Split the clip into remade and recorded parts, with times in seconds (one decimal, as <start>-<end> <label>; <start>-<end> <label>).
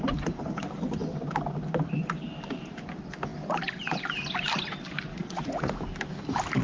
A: 0.0-5.1 recorded; 5.1-5.7 remade; 5.7-6.6 recorded